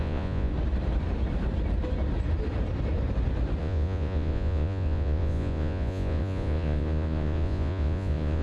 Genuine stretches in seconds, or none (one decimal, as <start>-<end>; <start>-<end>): 0.5-3.6